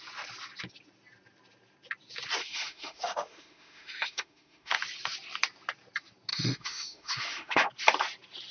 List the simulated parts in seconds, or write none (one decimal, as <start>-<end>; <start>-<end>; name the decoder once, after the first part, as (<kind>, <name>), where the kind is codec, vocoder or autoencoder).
2.4-4.8 (autoencoder, DAC-VAE); 6.3-7.7